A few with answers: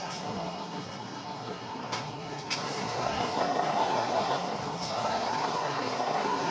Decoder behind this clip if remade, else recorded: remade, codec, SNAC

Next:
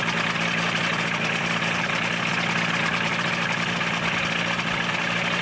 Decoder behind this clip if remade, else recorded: recorded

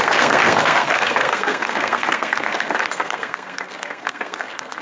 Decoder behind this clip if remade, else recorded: remade, codec, SNAC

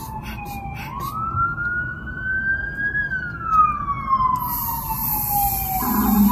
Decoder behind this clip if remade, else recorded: recorded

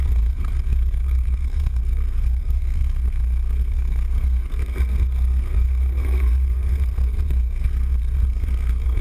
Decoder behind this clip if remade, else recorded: remade, codec, SNAC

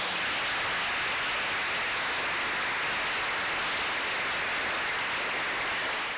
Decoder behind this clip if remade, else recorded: recorded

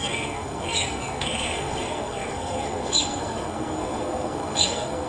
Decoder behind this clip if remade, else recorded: remade, codec, SNAC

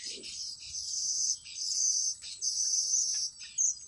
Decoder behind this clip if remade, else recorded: recorded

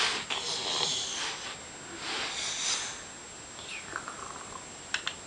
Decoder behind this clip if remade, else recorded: recorded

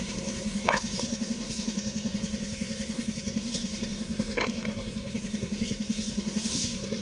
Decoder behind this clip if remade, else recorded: remade, codec, SNAC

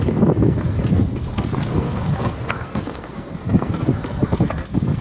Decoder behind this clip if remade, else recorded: remade, codec, SNAC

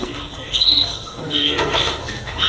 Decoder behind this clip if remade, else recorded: remade, codec, SNAC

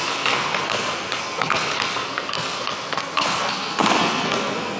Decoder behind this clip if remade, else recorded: remade, codec, SNAC